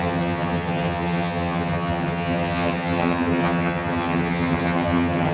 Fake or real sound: fake